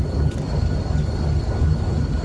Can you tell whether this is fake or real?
real